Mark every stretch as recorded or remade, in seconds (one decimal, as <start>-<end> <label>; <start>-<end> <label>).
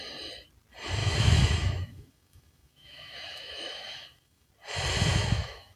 0.0-1.0 recorded; 1.0-4.5 remade; 4.5-5.1 recorded; 5.1-5.8 remade